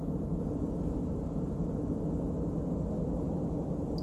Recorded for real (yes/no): yes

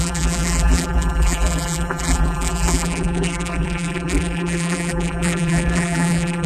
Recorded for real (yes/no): no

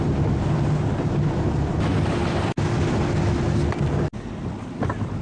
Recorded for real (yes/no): yes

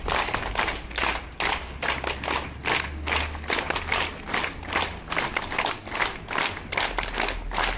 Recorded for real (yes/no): yes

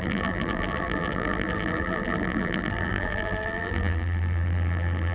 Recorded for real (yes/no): no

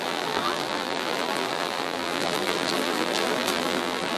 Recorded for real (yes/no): no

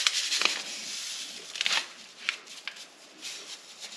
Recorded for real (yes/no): yes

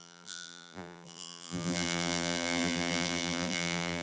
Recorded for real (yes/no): no